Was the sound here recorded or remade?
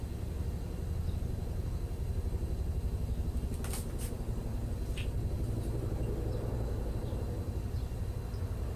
recorded